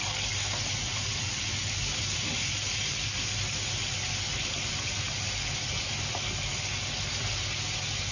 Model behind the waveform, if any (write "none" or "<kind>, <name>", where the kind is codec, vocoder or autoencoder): none